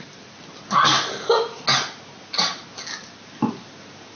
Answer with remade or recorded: recorded